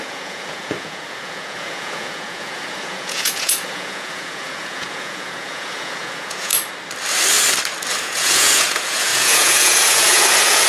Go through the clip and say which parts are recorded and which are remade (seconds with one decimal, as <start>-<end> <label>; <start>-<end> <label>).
0.0-6.5 remade; 6.5-8.0 recorded; 8.0-10.7 remade